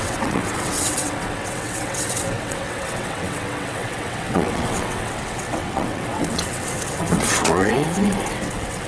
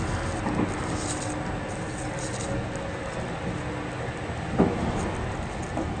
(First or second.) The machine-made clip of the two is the first